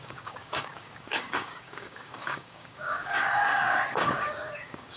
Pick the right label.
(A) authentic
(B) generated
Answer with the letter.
B